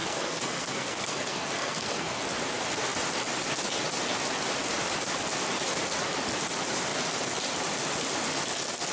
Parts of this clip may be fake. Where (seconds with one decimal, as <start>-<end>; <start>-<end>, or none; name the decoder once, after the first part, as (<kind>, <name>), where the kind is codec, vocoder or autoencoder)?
0.0-2.2 (codec, SNAC)

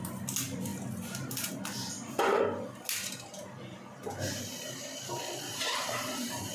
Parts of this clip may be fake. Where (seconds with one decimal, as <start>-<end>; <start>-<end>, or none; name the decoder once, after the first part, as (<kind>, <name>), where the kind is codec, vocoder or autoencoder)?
5.5-6.5 (vocoder, BigVGAN v2)

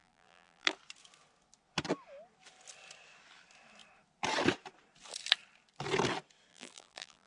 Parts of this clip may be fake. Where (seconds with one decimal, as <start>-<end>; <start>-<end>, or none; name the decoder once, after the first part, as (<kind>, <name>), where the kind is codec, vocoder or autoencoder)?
0.0-0.7 (vocoder, BigVGAN v2); 6.5-7.3

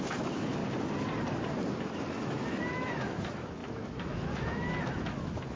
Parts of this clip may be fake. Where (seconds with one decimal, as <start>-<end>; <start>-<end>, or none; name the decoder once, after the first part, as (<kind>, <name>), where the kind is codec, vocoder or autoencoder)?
0.0-0.6 (autoencoder, DAC-VAE); 2.1-5.6